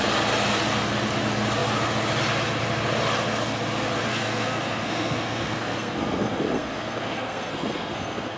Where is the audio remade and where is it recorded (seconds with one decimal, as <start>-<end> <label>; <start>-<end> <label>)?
0.0-4.1 recorded; 4.1-8.4 remade